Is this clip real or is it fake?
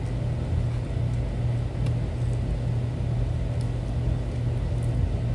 real